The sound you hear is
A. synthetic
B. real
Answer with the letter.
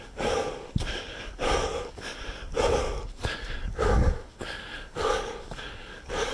A